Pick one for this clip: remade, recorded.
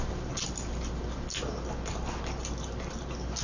recorded